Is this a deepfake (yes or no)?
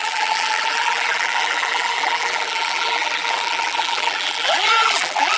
yes